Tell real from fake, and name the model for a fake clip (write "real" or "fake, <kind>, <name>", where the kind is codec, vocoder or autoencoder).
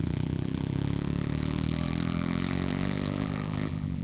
fake, vocoder, BigVGAN v2